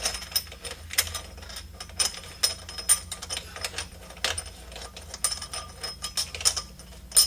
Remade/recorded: recorded